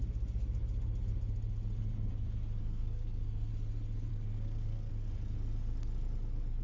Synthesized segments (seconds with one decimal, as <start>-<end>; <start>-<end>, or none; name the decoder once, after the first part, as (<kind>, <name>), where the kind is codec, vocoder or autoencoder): 2.6-3.5 (codec, SNAC); 4.1-4.9